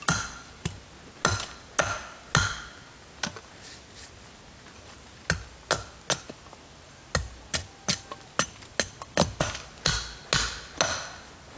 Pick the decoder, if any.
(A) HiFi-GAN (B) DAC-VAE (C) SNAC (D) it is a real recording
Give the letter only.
D